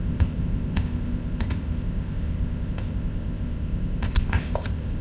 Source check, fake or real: fake